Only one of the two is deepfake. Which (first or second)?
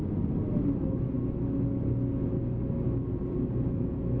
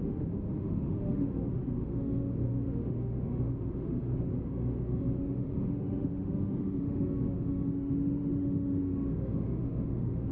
second